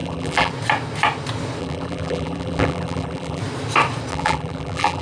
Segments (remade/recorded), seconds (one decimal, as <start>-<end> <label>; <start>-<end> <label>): 0.0-0.5 remade; 0.5-1.6 recorded; 1.6-3.4 remade; 3.4-4.1 recorded; 4.1-5.0 remade

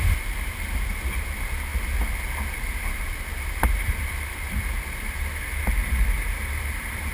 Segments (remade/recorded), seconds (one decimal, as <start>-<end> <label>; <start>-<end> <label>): 0.0-1.7 remade; 1.7-3.6 recorded; 3.6-7.1 remade

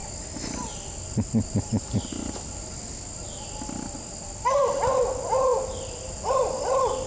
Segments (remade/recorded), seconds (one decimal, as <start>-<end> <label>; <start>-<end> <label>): 0.0-5.5 recorded; 5.5-6.3 remade; 6.3-7.1 recorded

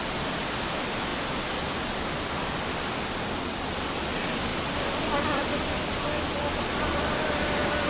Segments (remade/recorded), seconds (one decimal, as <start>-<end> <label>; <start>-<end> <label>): 0.0-7.9 recorded

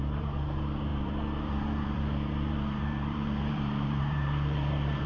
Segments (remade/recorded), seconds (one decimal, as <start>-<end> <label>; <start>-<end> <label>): 0.0-5.1 remade

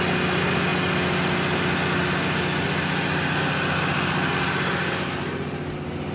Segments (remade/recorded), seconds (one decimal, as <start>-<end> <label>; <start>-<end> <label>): 0.0-6.1 recorded

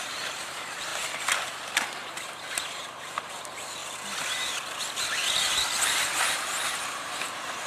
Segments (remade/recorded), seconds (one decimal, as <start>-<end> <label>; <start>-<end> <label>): 0.0-0.9 remade; 0.9-1.7 recorded; 1.7-3.8 remade; 3.8-6.9 recorded; 6.9-7.7 remade